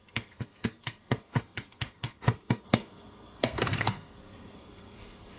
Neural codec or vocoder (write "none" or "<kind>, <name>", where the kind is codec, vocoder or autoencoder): codec, SNAC